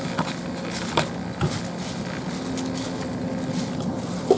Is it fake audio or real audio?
real